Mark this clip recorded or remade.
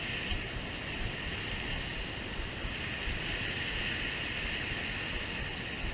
recorded